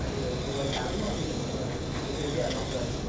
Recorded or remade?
recorded